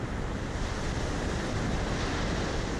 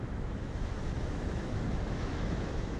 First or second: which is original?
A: first